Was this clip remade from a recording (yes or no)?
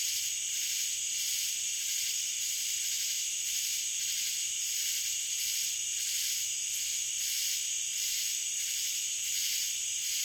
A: yes